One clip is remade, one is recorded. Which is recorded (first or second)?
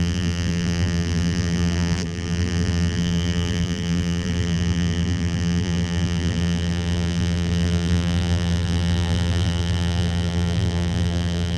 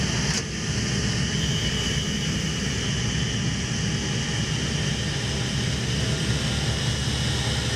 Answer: second